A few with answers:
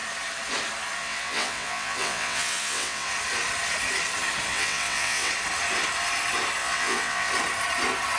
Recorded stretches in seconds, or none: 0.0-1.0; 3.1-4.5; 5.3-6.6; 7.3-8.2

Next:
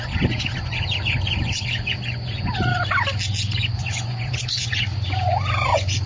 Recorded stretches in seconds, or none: 2.7-3.8